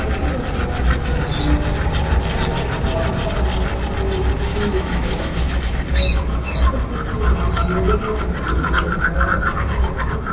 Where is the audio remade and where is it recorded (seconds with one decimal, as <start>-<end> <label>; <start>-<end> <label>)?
0.0-4.5 recorded; 4.5-5.6 remade; 5.6-10.3 recorded